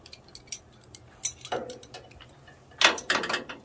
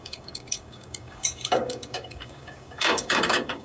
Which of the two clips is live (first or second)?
first